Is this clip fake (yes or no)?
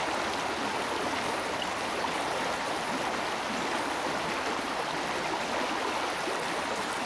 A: no